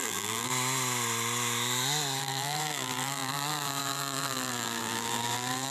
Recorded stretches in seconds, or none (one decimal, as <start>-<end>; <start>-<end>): 0.5-2.2